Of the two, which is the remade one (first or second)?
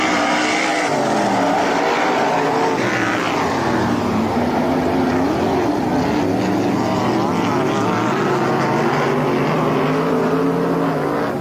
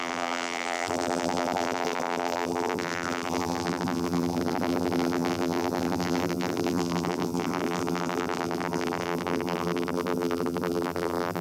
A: second